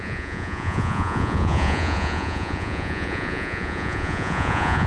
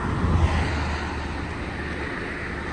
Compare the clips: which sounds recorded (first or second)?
second